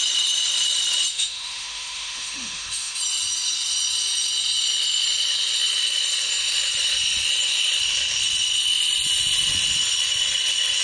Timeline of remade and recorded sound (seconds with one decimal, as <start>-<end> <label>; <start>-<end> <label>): 0.0-1.1 recorded; 1.1-3.0 remade; 3.0-10.8 recorded